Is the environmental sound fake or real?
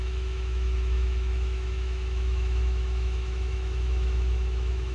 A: fake